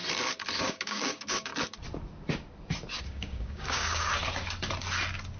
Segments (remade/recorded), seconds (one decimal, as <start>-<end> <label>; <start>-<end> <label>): 0.0-0.6 recorded; 0.6-1.5 remade; 1.5-3.0 recorded; 3.0-4.1 remade; 4.1-5.4 recorded